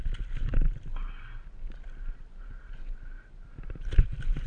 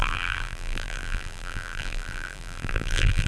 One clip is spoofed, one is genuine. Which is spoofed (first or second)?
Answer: second